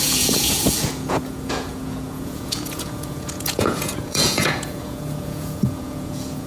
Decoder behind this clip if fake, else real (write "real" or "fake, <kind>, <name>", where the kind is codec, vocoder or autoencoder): fake, vocoder, Vocos